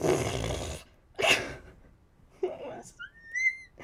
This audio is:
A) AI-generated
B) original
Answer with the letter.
B